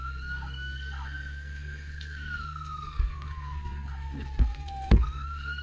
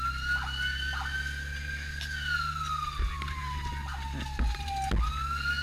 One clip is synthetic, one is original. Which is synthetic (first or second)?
first